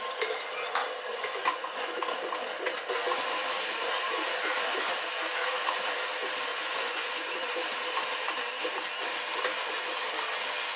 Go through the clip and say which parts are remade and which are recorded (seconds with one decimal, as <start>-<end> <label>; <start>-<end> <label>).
0.0-1.1 recorded; 1.1-2.0 remade; 2.0-6.5 recorded; 6.5-7.3 remade; 7.3-10.8 recorded